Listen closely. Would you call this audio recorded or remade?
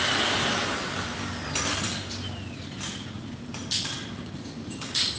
recorded